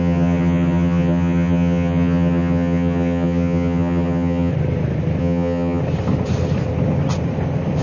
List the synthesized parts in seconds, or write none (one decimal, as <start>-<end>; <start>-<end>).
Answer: 0.0-4.5; 5.2-5.8